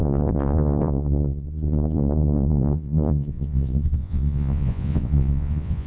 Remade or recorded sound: remade